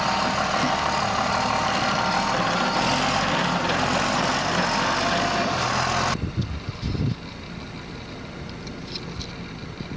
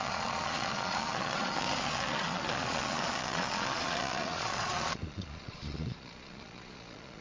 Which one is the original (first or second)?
first